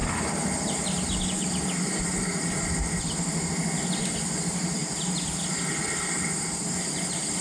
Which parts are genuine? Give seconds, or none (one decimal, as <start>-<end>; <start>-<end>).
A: 0.0-7.4